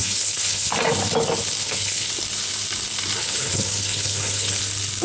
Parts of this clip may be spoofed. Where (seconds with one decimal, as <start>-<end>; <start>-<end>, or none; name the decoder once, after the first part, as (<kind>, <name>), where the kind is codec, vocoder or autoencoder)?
0.0-0.7 (codec, HILCodec); 1.6-2.1; 3.2-4.6

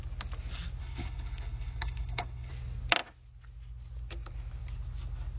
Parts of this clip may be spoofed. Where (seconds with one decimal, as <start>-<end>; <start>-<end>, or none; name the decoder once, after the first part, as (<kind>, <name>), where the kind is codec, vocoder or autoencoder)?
0.8-2.5 (codec, HILCodec)

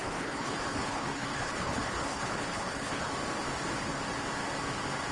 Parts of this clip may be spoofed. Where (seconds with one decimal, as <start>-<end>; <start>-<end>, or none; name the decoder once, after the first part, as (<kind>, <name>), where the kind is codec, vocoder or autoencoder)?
0.0-3.1 (codec, HILCodec)

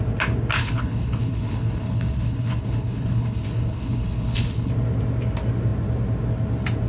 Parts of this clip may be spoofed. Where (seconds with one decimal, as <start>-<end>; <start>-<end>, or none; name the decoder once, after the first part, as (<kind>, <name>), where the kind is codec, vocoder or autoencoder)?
0.6-4.7 (codec, HILCodec)